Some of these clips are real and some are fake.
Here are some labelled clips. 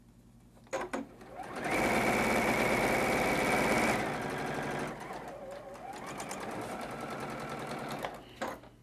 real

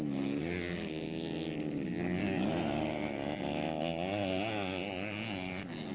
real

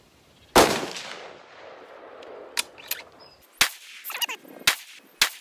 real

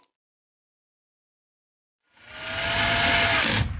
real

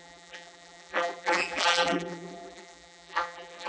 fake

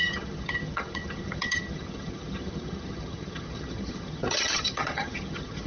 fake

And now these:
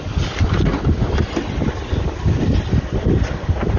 real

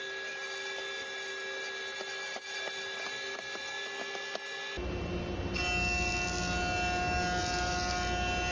real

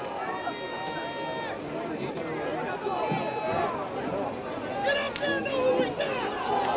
real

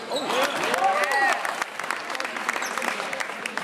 real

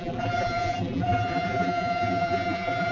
fake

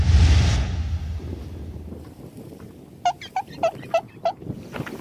real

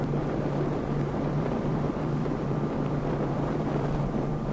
fake